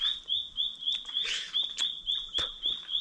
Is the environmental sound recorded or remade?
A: recorded